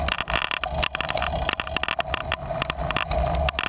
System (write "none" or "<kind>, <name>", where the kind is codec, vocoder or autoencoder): none